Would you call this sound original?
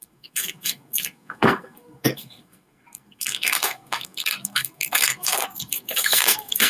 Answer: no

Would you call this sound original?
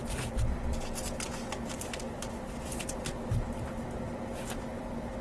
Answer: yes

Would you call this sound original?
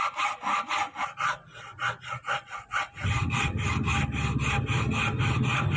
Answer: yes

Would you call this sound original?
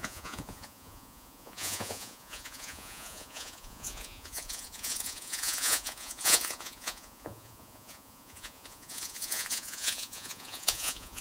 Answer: no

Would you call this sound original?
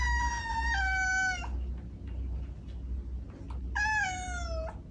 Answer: yes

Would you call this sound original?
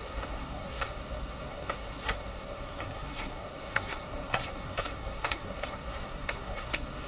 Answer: no